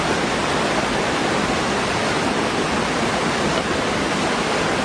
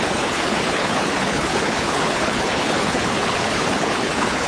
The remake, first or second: second